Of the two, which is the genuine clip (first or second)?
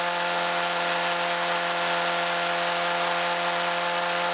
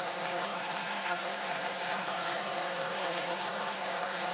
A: first